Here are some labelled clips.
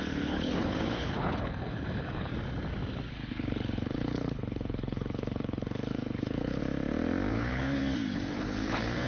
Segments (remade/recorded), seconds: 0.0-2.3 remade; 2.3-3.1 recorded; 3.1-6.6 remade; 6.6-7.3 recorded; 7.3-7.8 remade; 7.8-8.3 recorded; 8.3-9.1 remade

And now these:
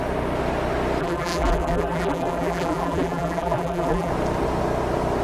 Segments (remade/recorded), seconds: 0.0-1.0 recorded; 1.0-4.1 remade; 4.1-5.2 recorded